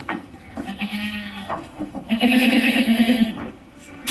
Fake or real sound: fake